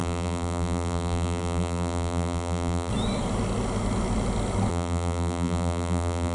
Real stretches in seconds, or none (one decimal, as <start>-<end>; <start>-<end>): 2.9-4.7

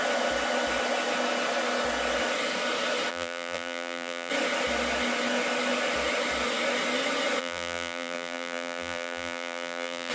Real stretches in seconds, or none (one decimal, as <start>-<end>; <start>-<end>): 0.0-3.1; 4.3-7.4

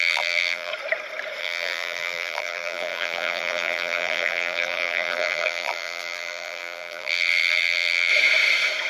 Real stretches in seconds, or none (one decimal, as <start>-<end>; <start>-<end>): 0.7-1.4; 8.1-8.9